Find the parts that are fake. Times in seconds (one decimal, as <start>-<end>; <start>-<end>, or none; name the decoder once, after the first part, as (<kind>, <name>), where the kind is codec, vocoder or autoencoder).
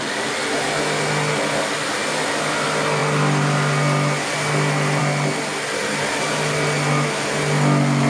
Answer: none